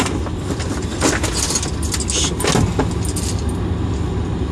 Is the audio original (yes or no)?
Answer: yes